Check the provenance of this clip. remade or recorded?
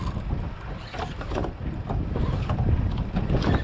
recorded